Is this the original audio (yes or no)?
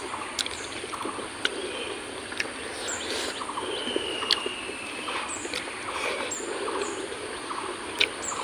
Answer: yes